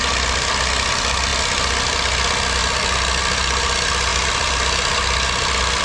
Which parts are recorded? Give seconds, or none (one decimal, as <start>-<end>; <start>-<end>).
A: 0.0-5.8